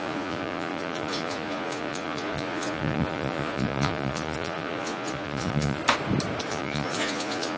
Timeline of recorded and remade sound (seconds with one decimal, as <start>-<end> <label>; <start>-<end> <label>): 0.0-5.8 remade; 5.8-6.5 recorded; 6.5-7.6 remade